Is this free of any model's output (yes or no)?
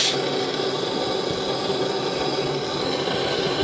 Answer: yes